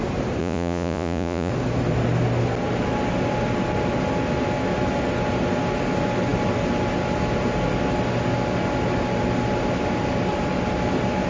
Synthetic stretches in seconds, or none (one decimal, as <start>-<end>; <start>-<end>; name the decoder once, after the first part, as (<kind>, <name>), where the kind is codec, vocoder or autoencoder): 0.4-1.5 (vocoder, Vocos)